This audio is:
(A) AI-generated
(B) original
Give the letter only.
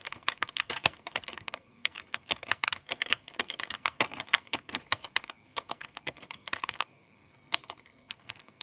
A